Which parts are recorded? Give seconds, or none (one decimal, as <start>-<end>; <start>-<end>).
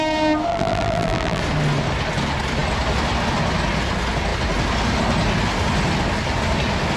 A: 0.0-0.5; 1.4-7.0